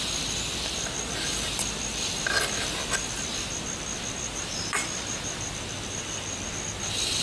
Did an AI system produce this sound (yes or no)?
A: no